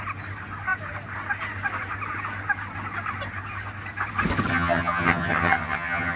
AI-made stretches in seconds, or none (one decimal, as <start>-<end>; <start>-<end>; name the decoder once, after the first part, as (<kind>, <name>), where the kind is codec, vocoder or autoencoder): 4.5-6.2 (vocoder, HiFi-GAN)